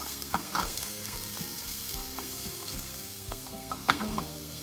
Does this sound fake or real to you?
fake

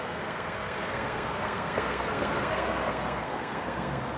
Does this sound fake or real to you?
fake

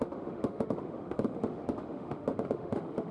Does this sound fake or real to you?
fake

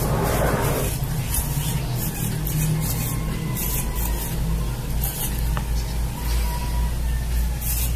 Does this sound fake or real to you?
real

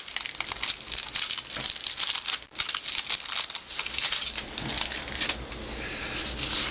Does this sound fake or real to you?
real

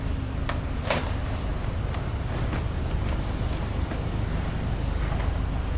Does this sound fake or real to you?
fake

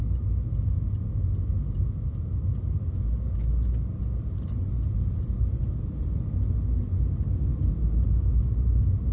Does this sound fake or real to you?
real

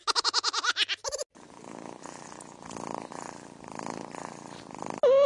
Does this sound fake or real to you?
real